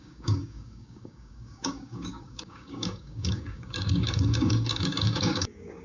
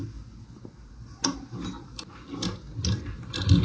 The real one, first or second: second